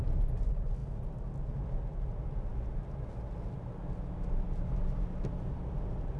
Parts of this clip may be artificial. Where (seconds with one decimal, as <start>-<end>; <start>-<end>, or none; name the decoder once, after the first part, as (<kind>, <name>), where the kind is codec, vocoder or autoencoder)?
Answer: none